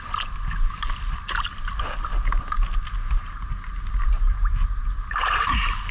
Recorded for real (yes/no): yes